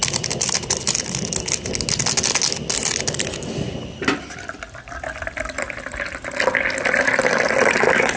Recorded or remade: recorded